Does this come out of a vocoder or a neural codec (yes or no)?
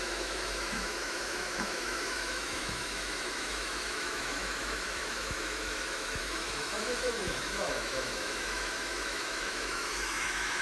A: yes